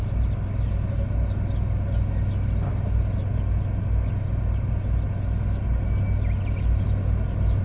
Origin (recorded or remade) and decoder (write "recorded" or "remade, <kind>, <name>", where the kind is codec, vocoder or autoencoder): recorded